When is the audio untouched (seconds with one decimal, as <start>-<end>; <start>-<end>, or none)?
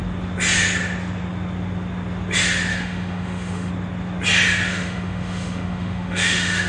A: 0.0-2.7; 3.7-4.7